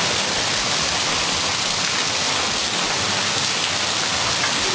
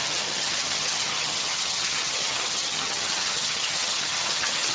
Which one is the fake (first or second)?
second